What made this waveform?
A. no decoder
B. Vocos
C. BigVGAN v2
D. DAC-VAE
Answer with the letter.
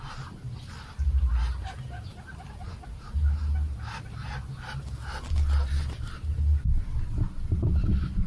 A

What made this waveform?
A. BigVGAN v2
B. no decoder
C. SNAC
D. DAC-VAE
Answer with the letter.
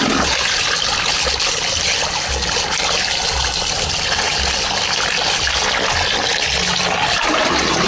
B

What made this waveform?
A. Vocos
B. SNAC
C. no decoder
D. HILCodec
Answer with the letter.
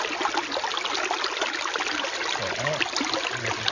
C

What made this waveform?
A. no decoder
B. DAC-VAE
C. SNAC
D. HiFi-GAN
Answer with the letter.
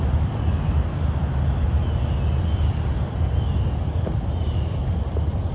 A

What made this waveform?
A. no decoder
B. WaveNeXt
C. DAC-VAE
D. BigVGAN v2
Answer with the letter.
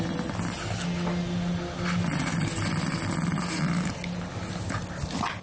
A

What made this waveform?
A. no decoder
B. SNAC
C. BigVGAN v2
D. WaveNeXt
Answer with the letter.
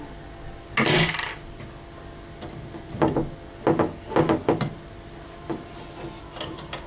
A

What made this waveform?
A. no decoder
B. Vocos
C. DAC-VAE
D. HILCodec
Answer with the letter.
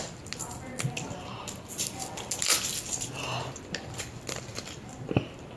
A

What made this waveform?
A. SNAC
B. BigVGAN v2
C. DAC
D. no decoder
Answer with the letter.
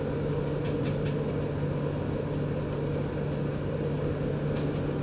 D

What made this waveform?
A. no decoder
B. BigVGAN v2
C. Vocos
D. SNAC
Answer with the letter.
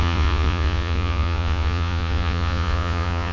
C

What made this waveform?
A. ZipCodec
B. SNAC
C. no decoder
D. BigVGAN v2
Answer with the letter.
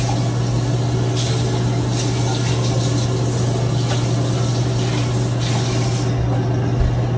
C